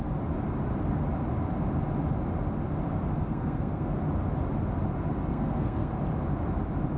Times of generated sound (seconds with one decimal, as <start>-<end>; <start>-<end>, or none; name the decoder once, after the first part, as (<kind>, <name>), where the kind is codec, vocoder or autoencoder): 3.3-4.0 (codec, SNAC); 5.3-5.9